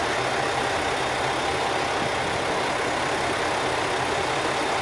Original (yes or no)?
yes